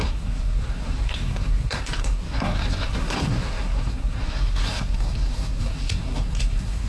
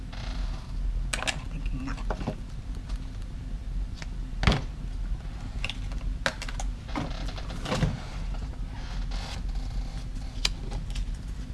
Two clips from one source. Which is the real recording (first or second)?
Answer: second